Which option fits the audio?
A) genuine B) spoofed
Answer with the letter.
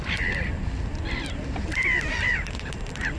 A